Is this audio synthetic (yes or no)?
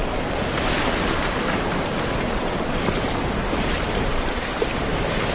no